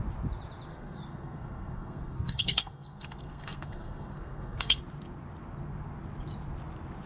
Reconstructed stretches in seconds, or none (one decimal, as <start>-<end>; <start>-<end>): 0.7-4.8